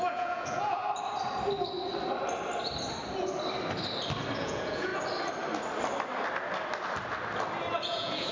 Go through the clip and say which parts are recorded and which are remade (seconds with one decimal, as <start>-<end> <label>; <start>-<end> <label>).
0.0-0.8 remade; 0.8-4.4 recorded; 4.4-4.9 remade; 4.9-7.8 recorded; 7.8-8.3 remade